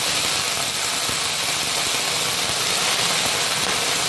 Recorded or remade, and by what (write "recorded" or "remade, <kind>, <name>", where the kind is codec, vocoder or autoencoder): recorded